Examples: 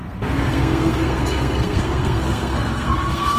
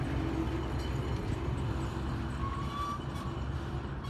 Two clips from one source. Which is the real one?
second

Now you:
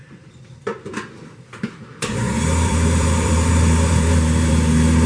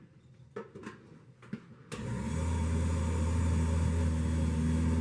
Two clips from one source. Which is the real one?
second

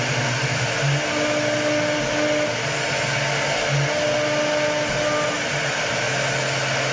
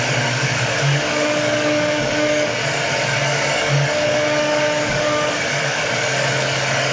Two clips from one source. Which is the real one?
first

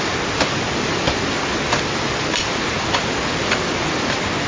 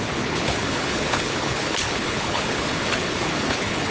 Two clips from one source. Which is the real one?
first